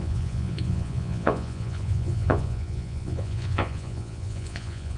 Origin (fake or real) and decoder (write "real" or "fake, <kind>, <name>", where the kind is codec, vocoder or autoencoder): fake, vocoder, Vocos